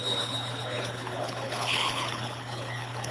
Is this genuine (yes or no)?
no